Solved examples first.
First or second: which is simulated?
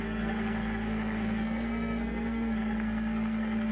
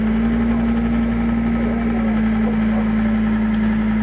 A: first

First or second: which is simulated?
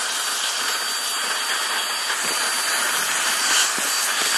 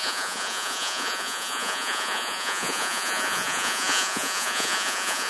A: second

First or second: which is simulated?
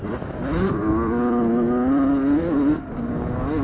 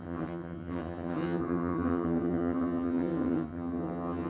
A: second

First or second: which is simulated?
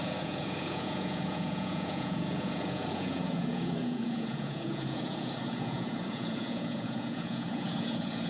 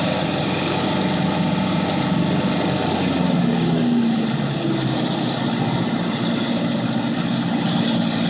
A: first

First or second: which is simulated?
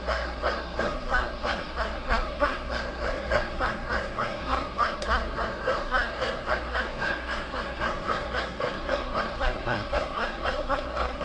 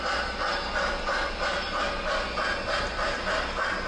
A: first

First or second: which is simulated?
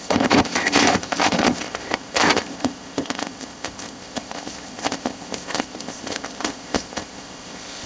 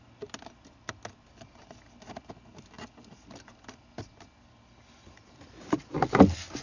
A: first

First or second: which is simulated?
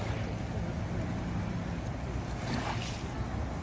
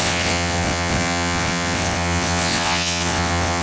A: second